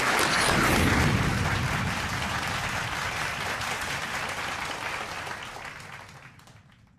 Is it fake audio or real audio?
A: real